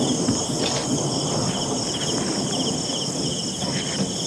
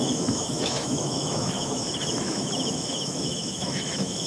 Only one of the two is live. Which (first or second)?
first